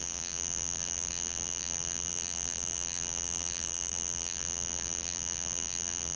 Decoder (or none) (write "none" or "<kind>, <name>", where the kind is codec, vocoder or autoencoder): vocoder, BigVGAN v2